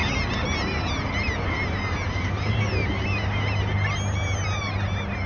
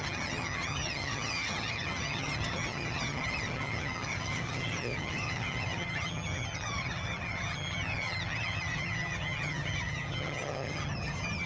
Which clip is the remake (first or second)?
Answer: second